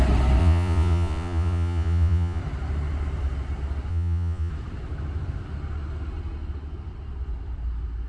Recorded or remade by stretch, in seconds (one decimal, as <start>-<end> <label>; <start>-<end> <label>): 0.0-0.4 recorded; 0.4-2.4 remade; 2.4-3.9 recorded; 3.9-4.5 remade; 4.5-8.1 recorded